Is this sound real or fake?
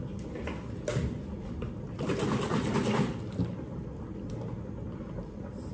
real